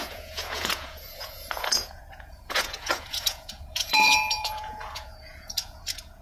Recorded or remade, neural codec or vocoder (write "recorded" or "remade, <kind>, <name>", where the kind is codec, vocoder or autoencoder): remade, vocoder, Vocos